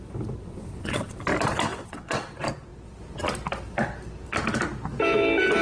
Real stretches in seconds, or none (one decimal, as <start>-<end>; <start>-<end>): 0.0-0.4; 1.2-1.7; 2.3-5.6